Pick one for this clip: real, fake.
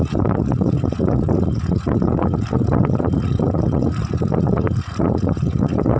fake